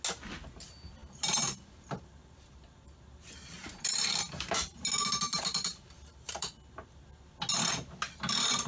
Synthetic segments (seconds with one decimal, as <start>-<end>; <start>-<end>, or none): 1.0-2.7; 3.6-6.5